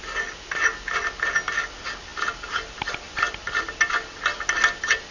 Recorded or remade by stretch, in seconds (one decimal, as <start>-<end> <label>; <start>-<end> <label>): 0.0-5.1 recorded